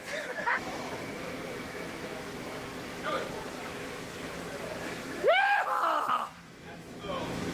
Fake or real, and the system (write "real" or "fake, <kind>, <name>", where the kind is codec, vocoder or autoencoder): fake, autoencoder, DAC-VAE